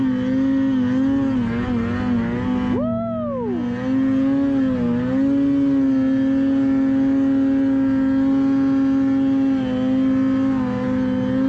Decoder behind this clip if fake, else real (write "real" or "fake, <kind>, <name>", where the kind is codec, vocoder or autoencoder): real